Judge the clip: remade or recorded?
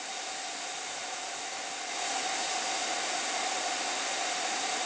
recorded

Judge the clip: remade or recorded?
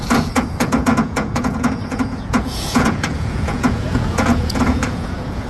remade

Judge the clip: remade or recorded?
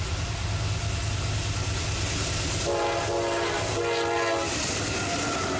recorded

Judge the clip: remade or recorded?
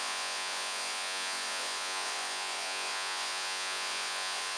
remade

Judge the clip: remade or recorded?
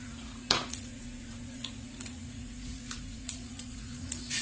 remade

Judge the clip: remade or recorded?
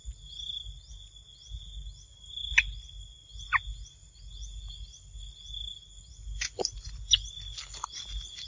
recorded